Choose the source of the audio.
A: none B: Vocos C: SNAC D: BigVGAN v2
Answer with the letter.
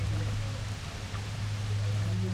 A